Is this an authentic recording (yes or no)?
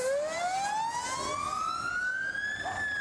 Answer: yes